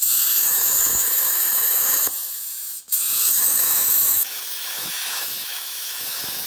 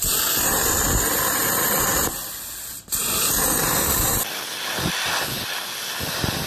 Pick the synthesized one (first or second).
first